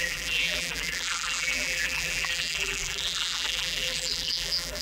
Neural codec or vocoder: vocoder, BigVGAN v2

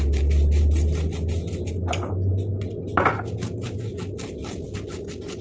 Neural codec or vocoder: none